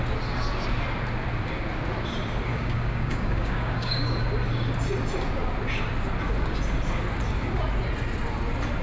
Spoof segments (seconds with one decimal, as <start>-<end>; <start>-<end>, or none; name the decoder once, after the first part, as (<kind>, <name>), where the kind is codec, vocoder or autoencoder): 2.5-4.1 (codec, DAC)